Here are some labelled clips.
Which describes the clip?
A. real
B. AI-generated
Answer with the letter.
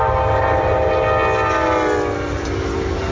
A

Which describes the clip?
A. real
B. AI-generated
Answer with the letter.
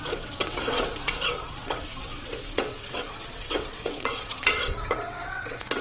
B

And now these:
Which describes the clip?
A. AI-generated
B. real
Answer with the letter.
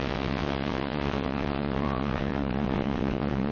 A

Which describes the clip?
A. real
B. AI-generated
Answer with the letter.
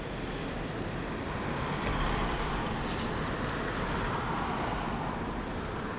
A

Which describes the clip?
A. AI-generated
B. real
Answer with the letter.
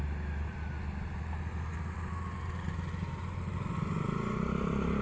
B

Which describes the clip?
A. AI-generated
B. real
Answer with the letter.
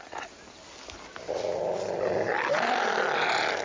B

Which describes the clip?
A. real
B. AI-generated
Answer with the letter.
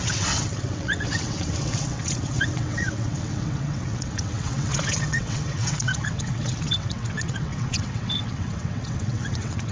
B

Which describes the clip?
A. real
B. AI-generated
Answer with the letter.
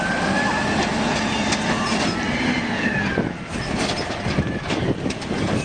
A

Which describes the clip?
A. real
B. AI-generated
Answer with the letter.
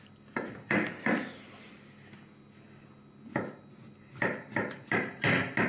A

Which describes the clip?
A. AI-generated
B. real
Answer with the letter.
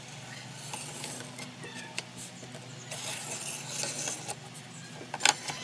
B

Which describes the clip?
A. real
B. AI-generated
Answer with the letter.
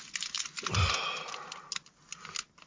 A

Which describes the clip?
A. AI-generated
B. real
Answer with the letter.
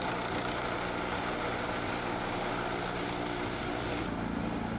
B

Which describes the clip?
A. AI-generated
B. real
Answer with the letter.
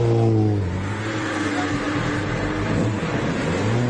B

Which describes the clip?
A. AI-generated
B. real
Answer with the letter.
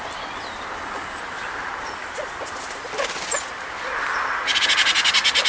B